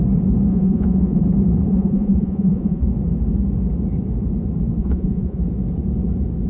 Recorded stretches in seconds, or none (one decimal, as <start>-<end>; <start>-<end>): 0.0-0.5; 1.2-1.7; 2.9-4.8; 5.4-6.5